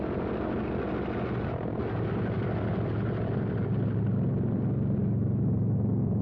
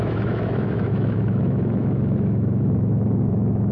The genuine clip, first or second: first